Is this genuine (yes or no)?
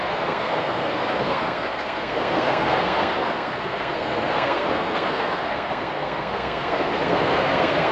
no